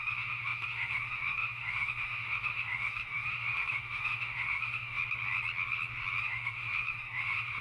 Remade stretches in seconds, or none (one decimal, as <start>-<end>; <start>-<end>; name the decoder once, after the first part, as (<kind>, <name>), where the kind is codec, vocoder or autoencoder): 0.0-5.0 (autoencoder, DAC-VAE); 6.2-7.6